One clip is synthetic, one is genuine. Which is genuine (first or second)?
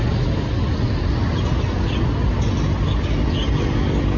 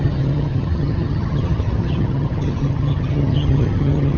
first